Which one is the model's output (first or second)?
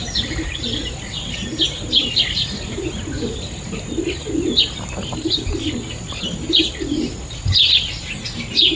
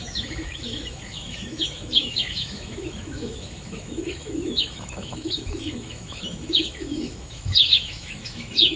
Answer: second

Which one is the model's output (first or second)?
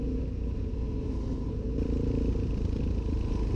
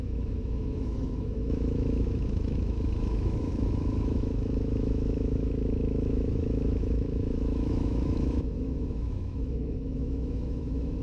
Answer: second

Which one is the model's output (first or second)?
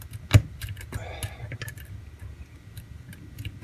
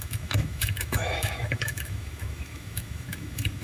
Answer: second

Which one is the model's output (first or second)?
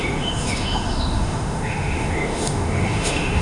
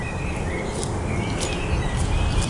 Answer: first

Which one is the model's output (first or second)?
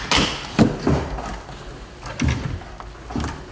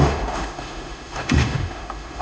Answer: second